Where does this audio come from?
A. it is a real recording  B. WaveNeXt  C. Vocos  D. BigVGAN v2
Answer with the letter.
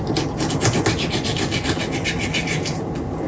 A